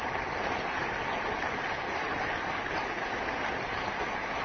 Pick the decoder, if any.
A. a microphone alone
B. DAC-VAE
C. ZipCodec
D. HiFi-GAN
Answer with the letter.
A